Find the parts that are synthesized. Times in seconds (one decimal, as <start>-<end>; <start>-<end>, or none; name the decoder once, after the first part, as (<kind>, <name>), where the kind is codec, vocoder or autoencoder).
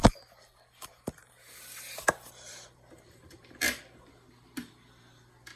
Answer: 1.2-3.8 (vocoder, BigVGAN v2)